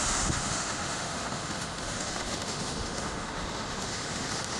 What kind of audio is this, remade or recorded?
remade